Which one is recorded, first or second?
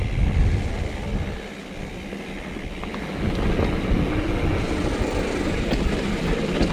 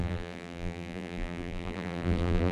first